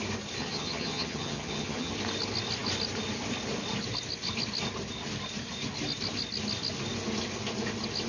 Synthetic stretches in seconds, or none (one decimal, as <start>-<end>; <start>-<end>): 0.4-1.9